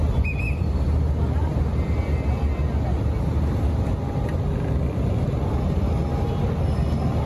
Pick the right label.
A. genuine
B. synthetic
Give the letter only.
A